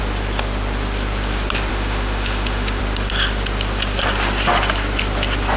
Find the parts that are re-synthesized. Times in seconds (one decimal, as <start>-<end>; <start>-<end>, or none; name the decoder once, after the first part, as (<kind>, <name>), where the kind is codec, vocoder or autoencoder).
1.7-2.8 (autoencoder, DAC-VAE)